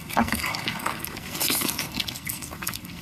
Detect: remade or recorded remade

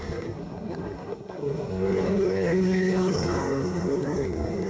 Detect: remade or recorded remade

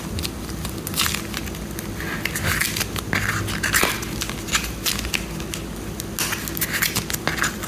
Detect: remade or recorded recorded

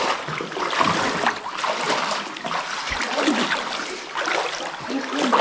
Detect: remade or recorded recorded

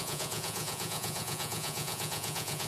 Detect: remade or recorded remade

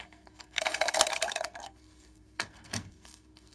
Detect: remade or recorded remade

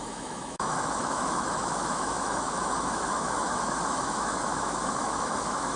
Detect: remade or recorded remade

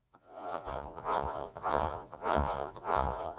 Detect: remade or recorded remade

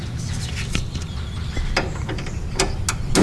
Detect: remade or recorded recorded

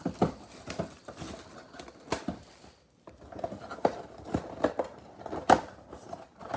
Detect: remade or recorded recorded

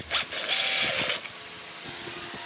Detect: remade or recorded recorded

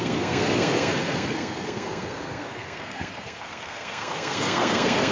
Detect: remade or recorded remade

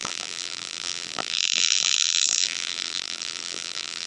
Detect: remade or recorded remade